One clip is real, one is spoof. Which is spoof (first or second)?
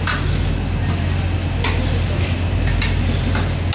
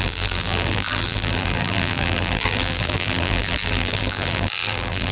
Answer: second